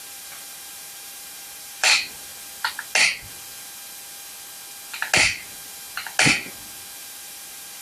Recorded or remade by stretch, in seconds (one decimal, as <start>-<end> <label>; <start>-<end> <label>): 0.0-2.3 remade; 2.3-7.0 recorded; 7.0-7.8 remade